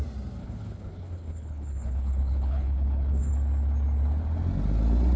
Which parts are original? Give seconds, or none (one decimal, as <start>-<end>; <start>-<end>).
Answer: 0.0-0.4; 3.3-5.2